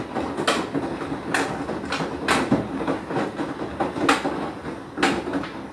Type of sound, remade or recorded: recorded